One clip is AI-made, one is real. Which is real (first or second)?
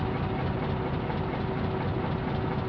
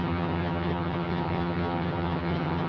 first